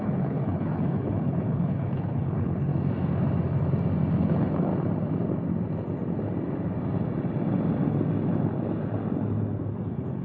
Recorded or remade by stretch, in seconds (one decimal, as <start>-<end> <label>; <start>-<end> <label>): 0.0-2.7 remade; 2.7-4.2 recorded; 4.2-4.7 remade; 4.7-9.7 recorded; 9.7-10.2 remade